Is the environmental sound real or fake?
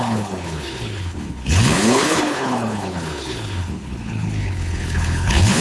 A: fake